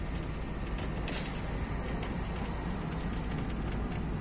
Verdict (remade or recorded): recorded